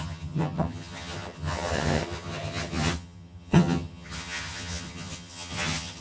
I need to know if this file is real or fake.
fake